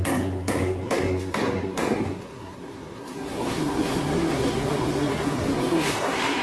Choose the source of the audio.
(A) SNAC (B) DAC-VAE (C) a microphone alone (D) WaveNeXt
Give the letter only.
A